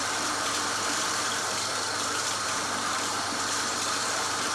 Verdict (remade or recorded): remade